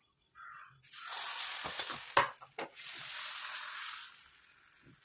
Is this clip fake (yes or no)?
no